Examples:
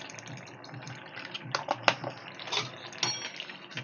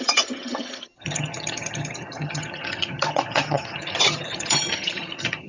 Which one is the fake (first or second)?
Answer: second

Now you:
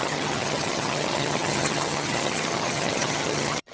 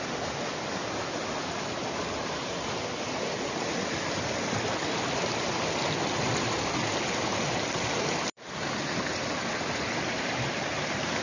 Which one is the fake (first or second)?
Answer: first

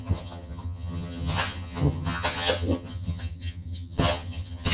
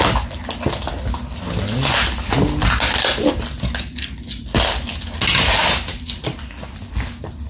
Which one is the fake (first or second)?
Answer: first